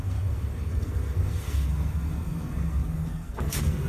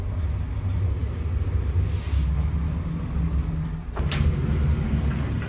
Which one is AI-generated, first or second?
first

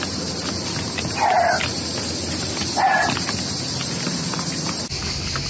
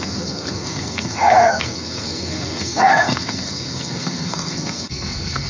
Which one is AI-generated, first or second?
second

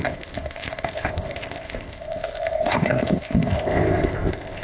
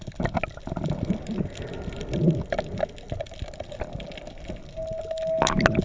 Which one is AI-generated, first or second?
first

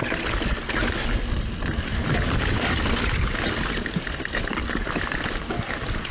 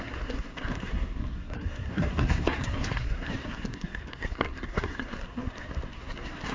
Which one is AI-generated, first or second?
second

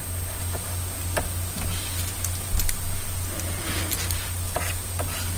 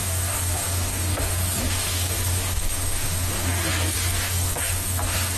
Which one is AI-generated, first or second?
second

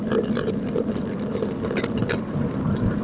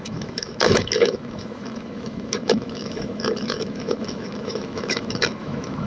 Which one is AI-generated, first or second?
second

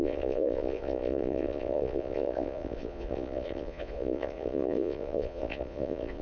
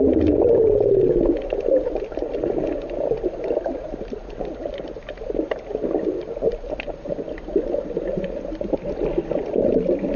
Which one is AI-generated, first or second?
first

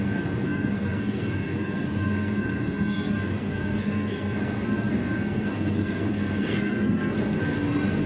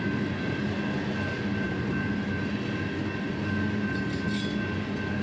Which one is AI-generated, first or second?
first